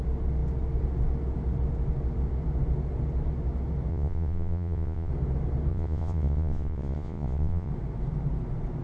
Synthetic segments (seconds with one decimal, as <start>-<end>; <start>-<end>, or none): 3.9-5.1; 5.7-7.7